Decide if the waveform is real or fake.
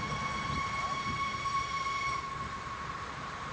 real